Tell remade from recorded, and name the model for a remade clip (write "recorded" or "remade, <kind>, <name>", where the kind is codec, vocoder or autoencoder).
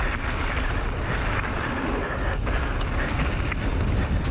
recorded